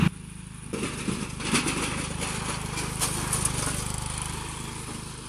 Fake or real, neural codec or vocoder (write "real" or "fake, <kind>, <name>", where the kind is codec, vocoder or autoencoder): real